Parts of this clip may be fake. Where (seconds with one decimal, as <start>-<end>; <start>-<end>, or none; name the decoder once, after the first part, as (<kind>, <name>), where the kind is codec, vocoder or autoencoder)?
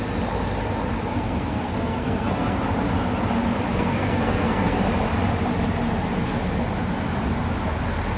1.1-2.6 (codec, SNAC); 3.7-4.8